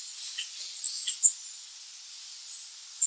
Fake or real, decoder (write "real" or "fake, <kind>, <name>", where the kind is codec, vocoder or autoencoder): real